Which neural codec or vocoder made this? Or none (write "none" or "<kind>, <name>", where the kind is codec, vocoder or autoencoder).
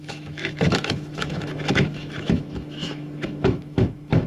autoencoder, DAC-VAE